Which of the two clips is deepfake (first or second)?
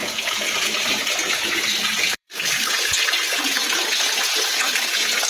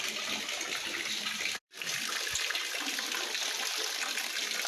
first